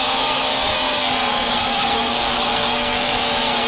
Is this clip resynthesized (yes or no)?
yes